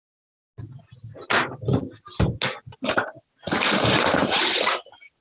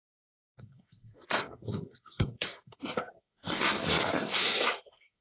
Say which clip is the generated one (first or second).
second